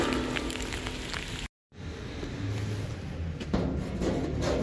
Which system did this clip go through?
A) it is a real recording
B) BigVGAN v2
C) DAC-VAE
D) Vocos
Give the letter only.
A